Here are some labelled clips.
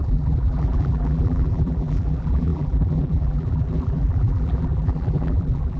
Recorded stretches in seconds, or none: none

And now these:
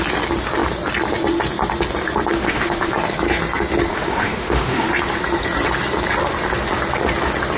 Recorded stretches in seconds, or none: 0.0-2.3; 2.9-3.9; 4.9-7.6

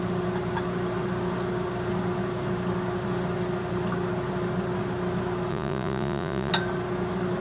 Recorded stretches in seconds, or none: 0.0-5.5; 6.5-7.4

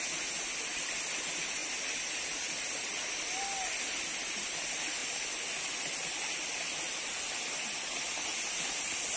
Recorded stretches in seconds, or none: 0.0-9.2

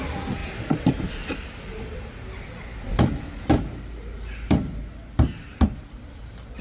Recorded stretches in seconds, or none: 0.0-6.6

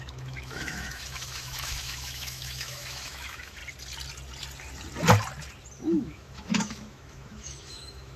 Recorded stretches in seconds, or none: 3.6-5.8